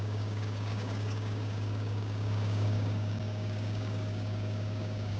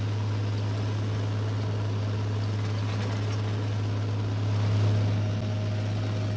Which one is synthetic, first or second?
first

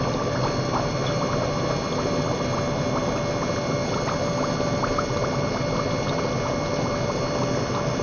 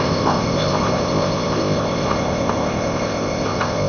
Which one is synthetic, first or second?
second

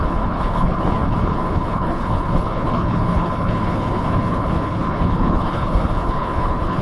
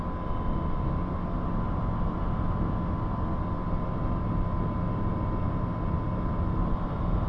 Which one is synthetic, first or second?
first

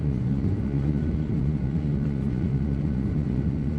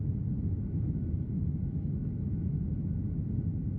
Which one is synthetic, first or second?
first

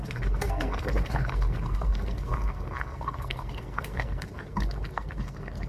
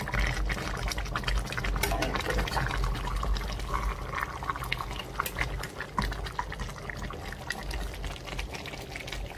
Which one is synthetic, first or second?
first